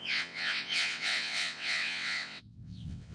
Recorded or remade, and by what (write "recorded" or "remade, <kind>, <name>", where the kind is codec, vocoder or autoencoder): remade, vocoder, WaveNeXt